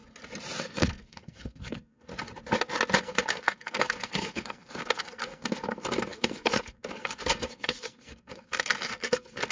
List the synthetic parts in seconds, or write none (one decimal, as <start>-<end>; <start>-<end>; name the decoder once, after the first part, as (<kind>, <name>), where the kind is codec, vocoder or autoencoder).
0.6-2.1 (codec, SNAC); 3.0-9.5